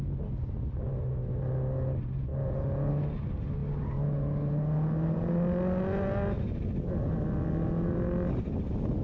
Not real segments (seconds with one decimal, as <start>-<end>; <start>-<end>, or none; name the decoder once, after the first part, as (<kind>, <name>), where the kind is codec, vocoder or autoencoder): none